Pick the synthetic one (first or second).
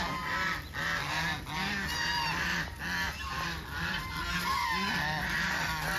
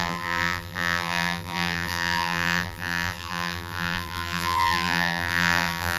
second